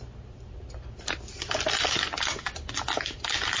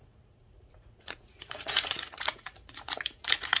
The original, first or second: first